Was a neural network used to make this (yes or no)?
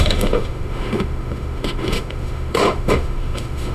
yes